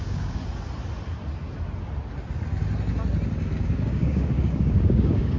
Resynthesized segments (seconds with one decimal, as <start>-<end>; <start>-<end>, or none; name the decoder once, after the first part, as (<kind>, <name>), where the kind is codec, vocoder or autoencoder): 0.0-0.4 (codec, DAC); 3.6-5.4